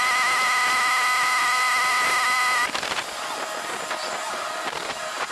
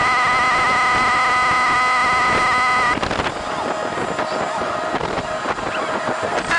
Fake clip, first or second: first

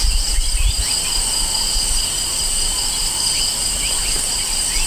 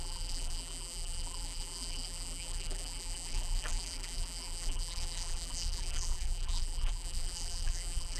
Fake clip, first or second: second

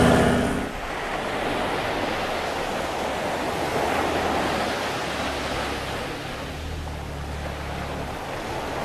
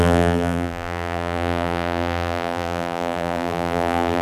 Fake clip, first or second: second